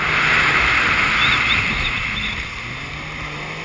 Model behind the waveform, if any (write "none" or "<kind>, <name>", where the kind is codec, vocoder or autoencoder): none